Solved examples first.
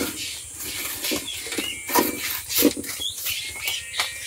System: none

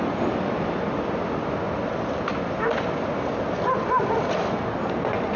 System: none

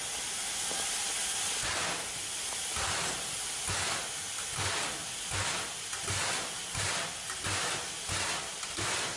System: none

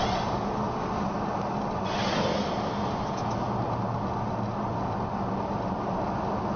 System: none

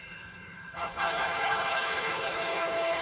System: codec, HILCodec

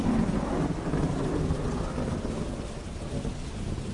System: none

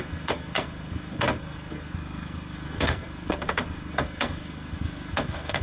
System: codec, SNAC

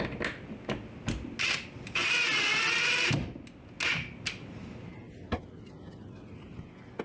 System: none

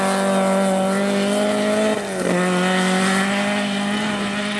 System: none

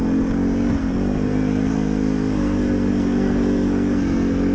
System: codec, SNAC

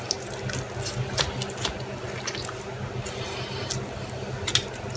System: none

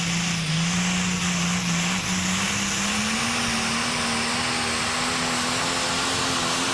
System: none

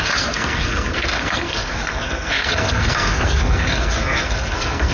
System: codec, SNAC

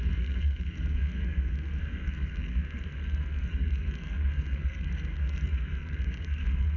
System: codec, SNAC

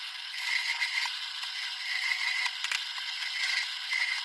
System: none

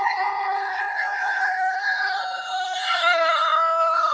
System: codec, SNAC